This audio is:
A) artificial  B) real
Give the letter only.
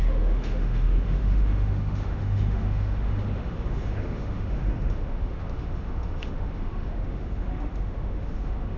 A